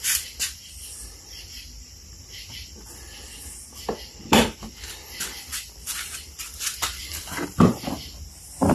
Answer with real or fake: fake